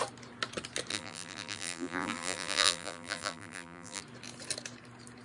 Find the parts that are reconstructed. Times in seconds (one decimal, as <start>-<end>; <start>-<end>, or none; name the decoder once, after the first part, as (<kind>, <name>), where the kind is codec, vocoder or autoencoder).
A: 0.9-4.0 (vocoder, BigVGAN v2)